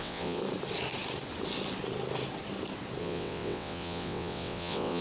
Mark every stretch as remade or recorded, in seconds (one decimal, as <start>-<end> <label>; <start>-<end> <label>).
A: 0.0-0.4 remade; 0.4-3.0 recorded; 3.0-5.0 remade